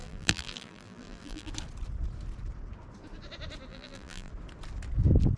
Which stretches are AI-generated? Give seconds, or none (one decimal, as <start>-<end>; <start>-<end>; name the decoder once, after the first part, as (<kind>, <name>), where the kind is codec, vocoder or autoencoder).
0.0-1.5 (vocoder, BigVGAN v2); 3.7-4.3